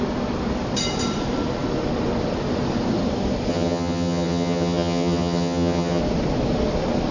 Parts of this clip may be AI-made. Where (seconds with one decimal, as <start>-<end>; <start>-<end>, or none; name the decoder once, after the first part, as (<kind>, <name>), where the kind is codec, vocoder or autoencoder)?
3.5-6.0 (vocoder, HiFi-GAN)